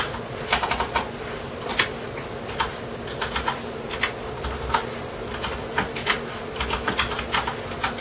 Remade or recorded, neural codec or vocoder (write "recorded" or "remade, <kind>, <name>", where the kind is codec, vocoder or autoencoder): recorded